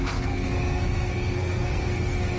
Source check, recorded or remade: remade